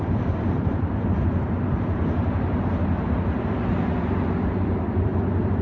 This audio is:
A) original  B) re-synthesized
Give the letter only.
B